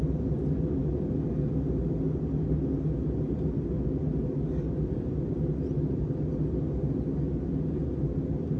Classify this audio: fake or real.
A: real